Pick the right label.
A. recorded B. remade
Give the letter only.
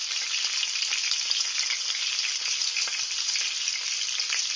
A